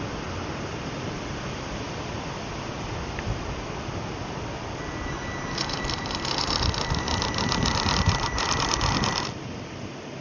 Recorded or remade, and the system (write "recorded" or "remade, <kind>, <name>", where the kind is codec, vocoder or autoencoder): recorded